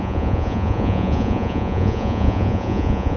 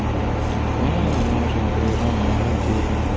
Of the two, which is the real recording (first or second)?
second